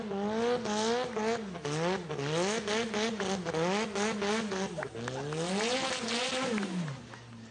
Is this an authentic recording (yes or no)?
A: yes